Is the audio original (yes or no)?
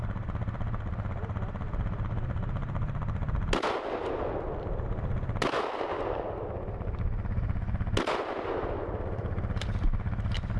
yes